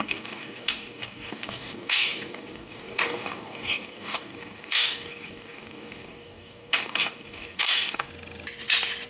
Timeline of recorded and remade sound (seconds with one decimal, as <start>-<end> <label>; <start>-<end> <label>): 0.0-8.1 remade; 8.1-9.1 recorded